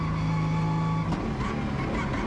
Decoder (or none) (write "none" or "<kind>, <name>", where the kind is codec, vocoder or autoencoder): none